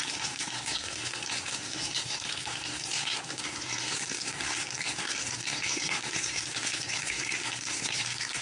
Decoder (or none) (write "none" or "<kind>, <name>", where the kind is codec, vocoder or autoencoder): codec, SNAC